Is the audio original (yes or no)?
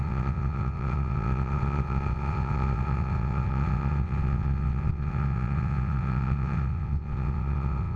no